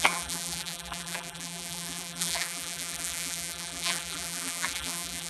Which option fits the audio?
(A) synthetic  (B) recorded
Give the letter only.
A